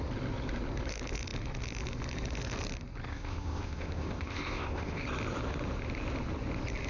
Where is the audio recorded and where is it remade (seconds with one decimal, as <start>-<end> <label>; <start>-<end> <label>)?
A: 0.0-3.1 recorded; 3.1-5.0 remade; 5.0-6.9 recorded